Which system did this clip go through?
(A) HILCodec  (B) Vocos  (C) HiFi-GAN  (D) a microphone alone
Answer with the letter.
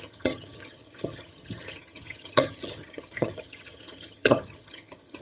C